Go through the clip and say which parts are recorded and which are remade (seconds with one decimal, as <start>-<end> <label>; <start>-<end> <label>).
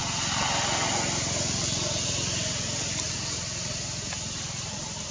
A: 0.0-5.1 recorded